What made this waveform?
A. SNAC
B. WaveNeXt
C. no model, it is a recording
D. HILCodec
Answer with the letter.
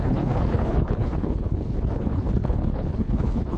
D